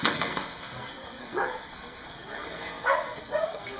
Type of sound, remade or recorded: remade